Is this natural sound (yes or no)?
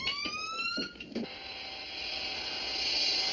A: yes